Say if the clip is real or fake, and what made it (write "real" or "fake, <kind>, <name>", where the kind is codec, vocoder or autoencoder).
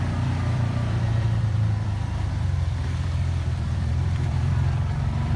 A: fake, vocoder, BigVGAN v2